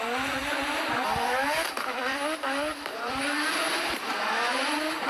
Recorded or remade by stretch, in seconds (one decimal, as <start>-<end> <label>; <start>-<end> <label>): 0.0-0.4 recorded; 0.4-3.2 remade; 3.2-4.1 recorded; 4.1-5.1 remade